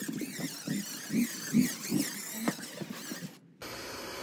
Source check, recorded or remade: recorded